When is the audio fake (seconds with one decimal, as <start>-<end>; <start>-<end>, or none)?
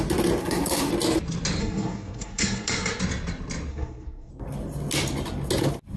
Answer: 0.4-0.9; 1.6-3.0; 3.7-4.3